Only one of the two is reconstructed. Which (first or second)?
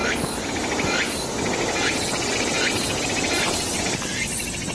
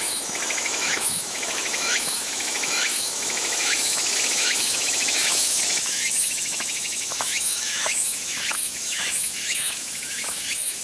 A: second